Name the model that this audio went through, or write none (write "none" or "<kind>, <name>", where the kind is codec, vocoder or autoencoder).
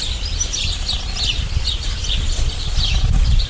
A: none